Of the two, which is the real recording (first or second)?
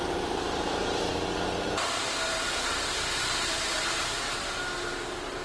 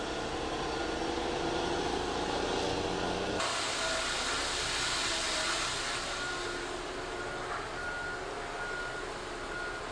second